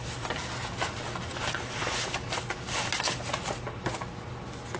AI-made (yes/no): no